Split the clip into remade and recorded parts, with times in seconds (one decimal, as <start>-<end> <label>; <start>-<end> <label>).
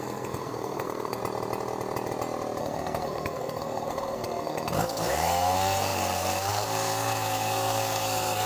0.0-1.2 remade; 1.2-2.6 recorded; 2.6-8.5 remade